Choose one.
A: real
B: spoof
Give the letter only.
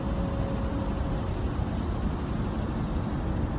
A